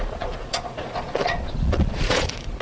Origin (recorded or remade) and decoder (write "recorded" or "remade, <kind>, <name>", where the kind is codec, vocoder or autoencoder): remade, vocoder, Vocos